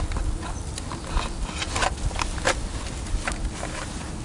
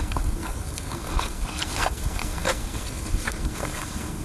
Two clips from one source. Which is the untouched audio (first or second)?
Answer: first